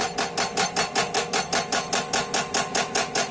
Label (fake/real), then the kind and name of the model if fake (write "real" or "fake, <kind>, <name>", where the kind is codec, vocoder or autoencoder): real